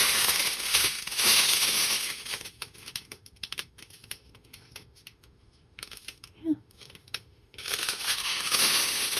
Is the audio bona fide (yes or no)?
no